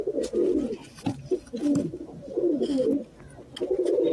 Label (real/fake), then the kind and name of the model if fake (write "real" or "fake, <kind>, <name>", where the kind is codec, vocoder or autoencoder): fake, vocoder, BigVGAN v2